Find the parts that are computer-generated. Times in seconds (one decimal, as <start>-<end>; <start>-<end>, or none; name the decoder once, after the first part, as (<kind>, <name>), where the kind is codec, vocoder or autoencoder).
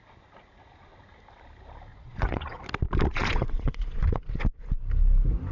1.9-2.6 (vocoder, Vocos); 3.1-4.4